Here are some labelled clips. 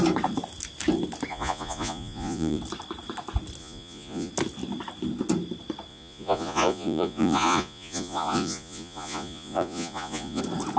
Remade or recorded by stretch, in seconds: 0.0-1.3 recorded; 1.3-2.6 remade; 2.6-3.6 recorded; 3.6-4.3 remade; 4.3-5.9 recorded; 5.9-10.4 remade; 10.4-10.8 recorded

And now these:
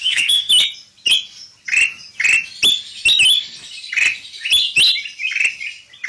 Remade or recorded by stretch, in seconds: 0.0-0.5 remade; 0.5-6.1 recorded

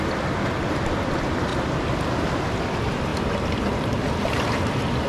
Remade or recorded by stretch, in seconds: 0.0-5.1 recorded